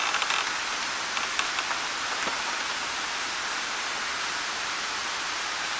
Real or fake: real